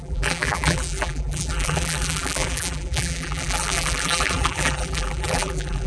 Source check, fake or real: fake